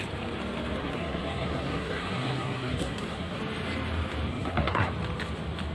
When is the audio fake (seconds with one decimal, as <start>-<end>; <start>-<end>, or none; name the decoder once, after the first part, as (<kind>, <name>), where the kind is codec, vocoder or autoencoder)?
0.8-3.4 (codec, SNAC); 4.3-4.9